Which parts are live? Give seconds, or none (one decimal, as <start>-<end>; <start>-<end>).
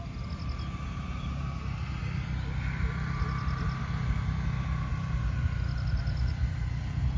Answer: 0.0-7.2